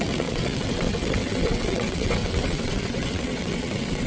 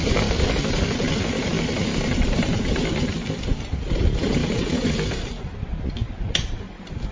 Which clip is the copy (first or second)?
first